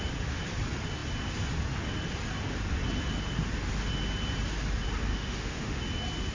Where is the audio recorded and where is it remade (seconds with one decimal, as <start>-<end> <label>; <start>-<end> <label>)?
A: 0.0-5.1 recorded; 5.1-5.8 remade; 5.8-6.3 recorded